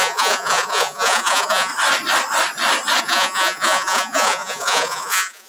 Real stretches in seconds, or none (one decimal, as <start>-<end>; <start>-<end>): 1.7-3.0